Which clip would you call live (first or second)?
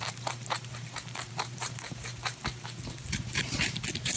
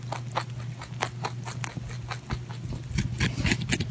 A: second